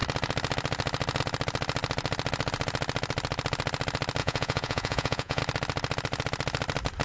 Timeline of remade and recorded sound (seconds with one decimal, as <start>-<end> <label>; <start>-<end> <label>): 0.0-4.2 recorded; 4.2-5.4 remade; 5.4-7.0 recorded